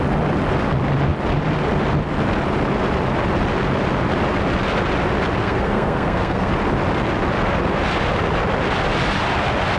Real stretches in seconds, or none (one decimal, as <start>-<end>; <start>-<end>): 0.0-5.4; 6.5-9.8